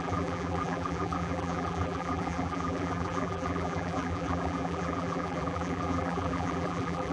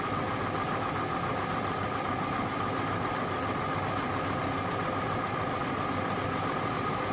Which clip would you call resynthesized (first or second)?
first